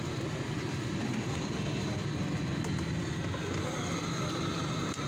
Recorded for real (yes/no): yes